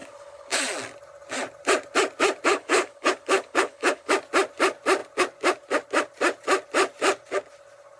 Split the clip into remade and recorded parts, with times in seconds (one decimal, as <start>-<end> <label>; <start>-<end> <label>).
0.0-0.6 remade; 0.6-2.5 recorded; 2.5-4.1 remade; 4.1-8.0 recorded